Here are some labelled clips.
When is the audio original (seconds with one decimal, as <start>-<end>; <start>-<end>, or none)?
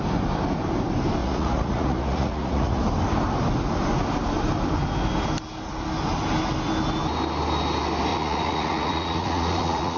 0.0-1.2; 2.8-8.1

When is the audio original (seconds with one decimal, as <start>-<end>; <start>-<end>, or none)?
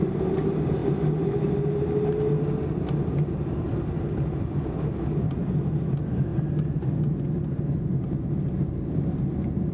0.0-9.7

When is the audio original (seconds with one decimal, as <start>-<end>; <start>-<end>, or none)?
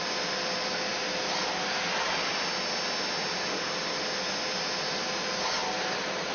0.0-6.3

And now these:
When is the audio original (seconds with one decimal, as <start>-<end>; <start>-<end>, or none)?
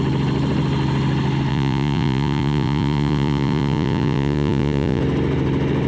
0.0-1.5; 5.0-5.9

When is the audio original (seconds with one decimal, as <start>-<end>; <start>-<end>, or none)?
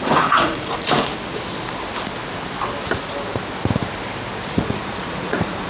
1.1-4.5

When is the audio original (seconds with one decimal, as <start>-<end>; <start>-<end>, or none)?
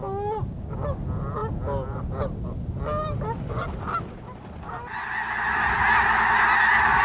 0.0-7.0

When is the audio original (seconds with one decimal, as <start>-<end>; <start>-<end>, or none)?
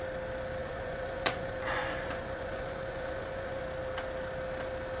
0.0-0.6; 3.6-5.0